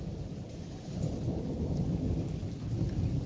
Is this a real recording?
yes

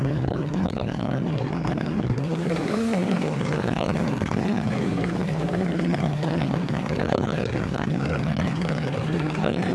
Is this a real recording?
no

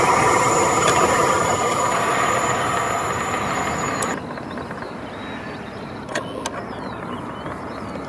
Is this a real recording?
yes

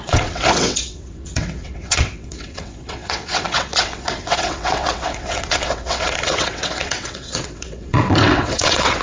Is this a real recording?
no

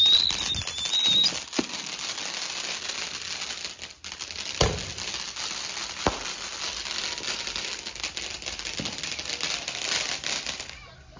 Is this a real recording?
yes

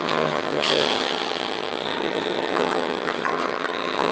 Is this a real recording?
no